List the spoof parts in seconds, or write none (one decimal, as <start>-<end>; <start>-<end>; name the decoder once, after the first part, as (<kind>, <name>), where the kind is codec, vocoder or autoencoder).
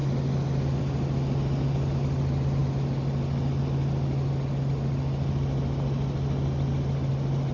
none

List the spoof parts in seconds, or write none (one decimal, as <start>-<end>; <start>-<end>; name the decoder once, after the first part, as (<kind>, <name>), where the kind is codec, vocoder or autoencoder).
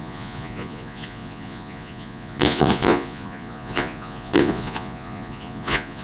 0.0-6.0 (vocoder, Vocos)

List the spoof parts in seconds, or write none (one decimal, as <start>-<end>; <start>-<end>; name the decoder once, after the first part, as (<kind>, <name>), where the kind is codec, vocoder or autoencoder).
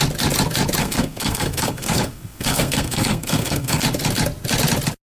0.8-3.8 (codec, SNAC)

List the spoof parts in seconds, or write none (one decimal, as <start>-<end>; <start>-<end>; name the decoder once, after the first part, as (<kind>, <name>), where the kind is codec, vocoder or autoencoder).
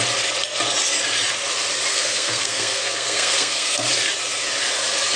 1.9-3.9 (codec, SNAC)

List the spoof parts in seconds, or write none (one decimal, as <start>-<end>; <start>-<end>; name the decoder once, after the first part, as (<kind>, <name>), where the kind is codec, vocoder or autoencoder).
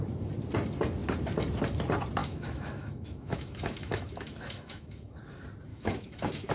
2.2-5.2 (autoencoder, DAC-VAE); 5.7-6.5